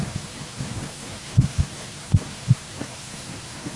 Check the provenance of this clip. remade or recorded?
remade